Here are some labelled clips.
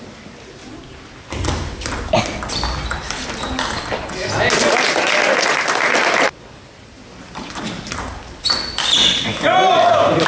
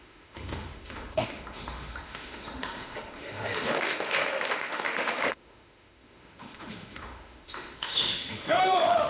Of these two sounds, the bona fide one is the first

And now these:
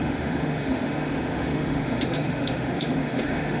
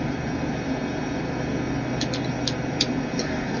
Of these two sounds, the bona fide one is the second